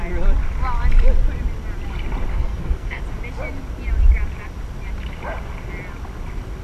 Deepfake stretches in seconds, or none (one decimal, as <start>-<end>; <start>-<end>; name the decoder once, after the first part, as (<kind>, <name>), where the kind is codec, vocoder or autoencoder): 2.3-3.0 (codec, SNAC)